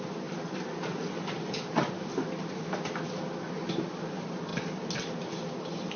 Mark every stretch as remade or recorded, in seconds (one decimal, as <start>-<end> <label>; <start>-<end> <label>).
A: 0.0-6.0 recorded